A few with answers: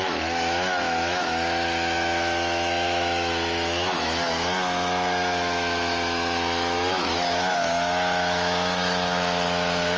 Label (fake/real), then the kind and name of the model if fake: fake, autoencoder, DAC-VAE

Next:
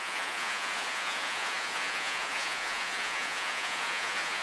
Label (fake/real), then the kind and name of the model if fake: fake, vocoder, Vocos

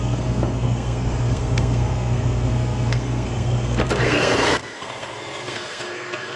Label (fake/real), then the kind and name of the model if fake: fake, codec, SNAC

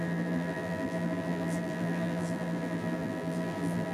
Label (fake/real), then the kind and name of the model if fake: fake, vocoder, BigVGAN v2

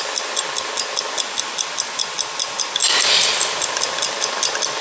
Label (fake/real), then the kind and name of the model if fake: real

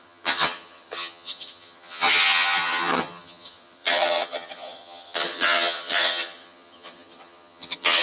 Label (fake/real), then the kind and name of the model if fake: fake, vocoder, HiFi-GAN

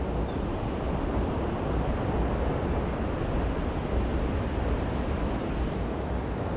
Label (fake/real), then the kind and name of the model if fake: real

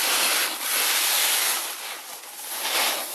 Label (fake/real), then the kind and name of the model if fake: real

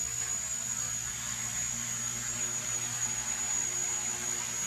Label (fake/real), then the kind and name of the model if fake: real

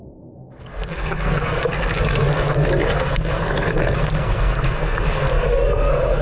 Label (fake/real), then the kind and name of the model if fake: fake, codec, SNAC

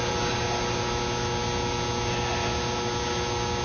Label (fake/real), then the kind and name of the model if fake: real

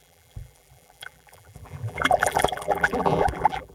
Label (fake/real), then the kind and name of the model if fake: fake, vocoder, BigVGAN v2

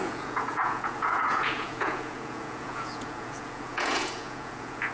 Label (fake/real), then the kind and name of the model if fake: fake, vocoder, Vocos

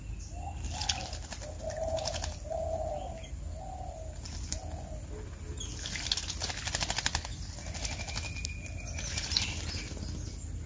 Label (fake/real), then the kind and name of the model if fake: real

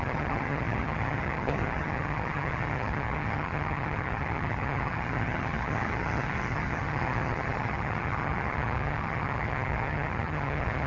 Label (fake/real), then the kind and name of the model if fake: fake, vocoder, HiFi-GAN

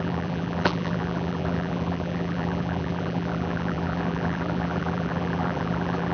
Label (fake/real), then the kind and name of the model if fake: fake, vocoder, BigVGAN v2